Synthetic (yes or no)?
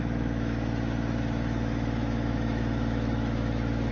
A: yes